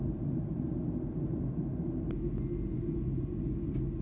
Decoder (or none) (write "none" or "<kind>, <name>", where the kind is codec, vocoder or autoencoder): none